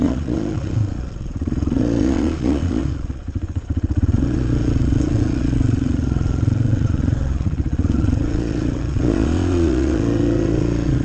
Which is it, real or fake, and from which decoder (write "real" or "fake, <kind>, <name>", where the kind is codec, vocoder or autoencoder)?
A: fake, vocoder, Vocos